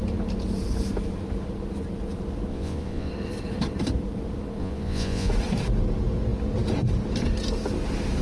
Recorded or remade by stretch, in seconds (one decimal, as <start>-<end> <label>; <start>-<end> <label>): 0.0-2.5 recorded; 2.5-3.1 remade; 3.1-4.6 recorded; 4.6-5.3 remade; 5.3-8.2 recorded